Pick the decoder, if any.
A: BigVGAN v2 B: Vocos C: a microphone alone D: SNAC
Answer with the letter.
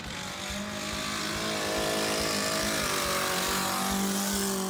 C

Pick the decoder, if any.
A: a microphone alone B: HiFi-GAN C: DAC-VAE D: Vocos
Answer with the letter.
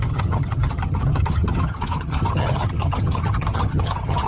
B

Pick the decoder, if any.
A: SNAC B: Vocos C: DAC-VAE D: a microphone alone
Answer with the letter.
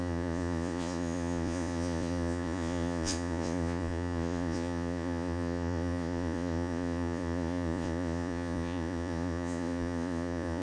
B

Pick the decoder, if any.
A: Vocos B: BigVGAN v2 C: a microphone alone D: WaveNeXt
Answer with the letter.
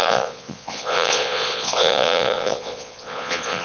A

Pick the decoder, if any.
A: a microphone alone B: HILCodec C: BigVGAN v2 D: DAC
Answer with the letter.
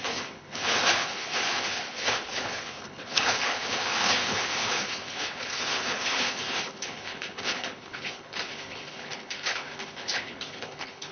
B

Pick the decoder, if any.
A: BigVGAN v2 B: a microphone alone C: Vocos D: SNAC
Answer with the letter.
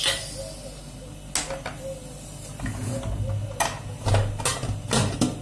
B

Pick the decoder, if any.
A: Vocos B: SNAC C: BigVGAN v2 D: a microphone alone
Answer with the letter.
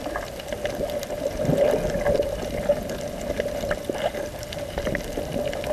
D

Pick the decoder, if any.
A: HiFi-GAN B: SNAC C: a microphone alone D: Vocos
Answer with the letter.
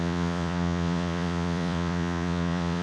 D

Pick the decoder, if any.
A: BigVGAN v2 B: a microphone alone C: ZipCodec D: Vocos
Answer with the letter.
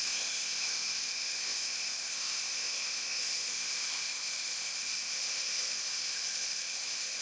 C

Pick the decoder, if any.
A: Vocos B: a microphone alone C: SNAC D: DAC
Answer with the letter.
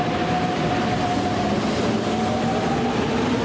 B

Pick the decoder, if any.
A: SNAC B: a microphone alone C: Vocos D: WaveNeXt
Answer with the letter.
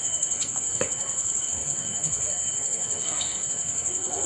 A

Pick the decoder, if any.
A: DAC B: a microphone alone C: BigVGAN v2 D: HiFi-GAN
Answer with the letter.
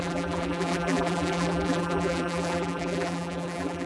C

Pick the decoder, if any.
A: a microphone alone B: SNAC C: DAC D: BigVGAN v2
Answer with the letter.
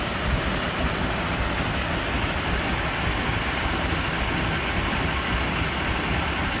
A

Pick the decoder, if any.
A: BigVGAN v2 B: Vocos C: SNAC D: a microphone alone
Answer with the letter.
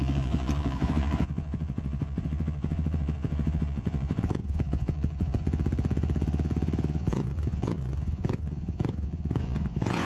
B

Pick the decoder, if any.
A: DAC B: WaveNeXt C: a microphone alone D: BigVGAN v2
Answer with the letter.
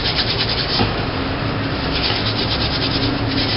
C